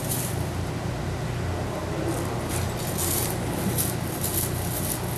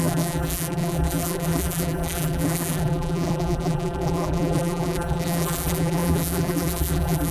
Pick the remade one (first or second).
second